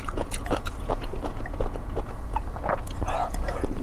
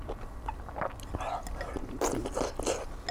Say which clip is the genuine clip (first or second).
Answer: second